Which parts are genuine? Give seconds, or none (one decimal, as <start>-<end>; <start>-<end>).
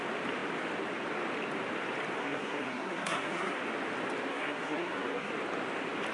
0.0-2.2; 3.6-4.3; 5.3-6.1